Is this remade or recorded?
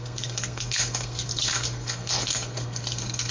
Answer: remade